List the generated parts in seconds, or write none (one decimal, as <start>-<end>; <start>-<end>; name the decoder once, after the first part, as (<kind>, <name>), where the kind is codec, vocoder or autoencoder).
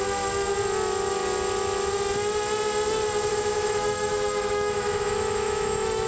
3.3-6.1 (autoencoder, DAC-VAE)